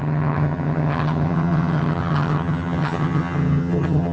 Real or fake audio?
fake